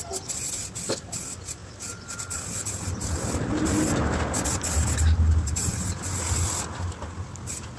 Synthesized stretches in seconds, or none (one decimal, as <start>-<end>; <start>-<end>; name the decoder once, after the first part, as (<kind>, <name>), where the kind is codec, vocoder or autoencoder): none